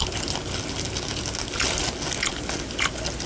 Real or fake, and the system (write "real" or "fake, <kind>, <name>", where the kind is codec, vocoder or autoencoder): real